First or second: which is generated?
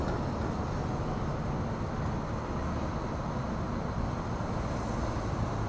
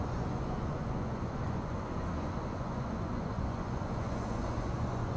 second